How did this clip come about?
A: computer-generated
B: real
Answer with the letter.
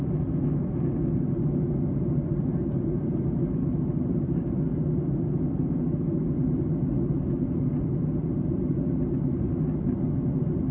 B